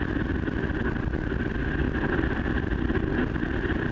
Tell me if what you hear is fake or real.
real